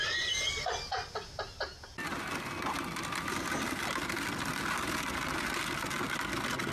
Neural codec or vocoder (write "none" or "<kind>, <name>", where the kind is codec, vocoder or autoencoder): none